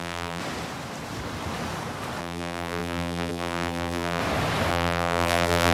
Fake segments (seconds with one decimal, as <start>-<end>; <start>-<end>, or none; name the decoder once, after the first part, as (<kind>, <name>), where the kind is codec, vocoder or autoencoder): 0.0-0.4 (vocoder, BigVGAN v2); 2.2-4.2; 4.7-5.7